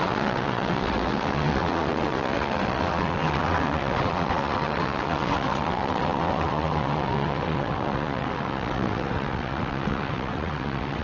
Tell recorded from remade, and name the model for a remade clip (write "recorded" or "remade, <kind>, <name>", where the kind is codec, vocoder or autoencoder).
remade, vocoder, WaveNeXt